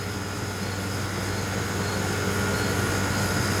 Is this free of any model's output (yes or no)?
yes